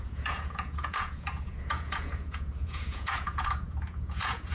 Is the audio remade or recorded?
remade